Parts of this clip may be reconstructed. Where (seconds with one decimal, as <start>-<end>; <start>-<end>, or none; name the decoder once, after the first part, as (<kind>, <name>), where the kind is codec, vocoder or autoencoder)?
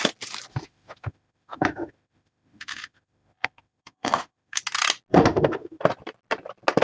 0.5-4.6 (autoencoder, DAC-VAE); 5.1-5.8